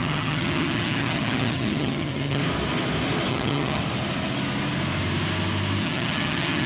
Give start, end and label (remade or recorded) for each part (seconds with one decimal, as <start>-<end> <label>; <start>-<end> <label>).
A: 0.0-2.4 remade; 2.4-3.3 recorded; 3.3-3.8 remade; 3.8-5.8 recorded; 5.8-6.7 remade